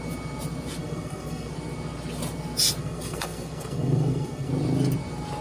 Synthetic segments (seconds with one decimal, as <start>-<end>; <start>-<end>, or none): 0.8-1.5; 2.8-4.5